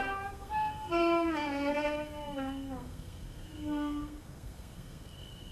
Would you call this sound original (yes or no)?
no